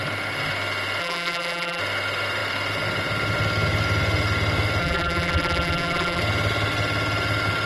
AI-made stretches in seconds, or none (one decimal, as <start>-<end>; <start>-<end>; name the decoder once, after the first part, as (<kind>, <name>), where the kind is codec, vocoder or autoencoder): 1.0-1.8 (vocoder, BigVGAN v2); 4.8-6.2